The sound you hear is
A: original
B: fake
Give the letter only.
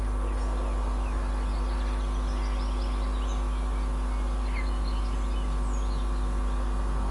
A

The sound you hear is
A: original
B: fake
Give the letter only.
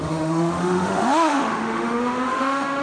B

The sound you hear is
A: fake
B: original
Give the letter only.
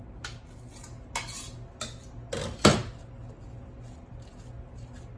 B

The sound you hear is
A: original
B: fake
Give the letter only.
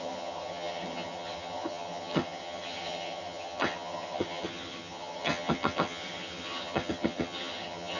B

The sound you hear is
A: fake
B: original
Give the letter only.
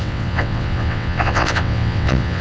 A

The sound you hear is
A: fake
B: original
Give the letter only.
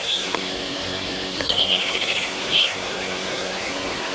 A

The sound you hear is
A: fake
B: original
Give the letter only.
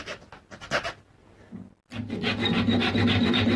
B